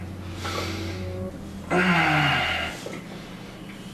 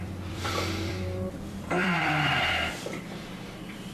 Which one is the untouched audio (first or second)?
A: first